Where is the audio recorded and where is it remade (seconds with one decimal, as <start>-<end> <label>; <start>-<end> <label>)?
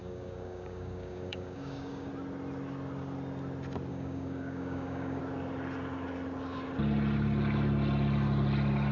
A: 0.0-2.1 remade; 2.1-3.9 recorded; 3.9-5.2 remade; 5.2-8.9 recorded